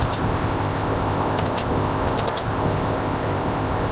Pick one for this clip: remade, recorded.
remade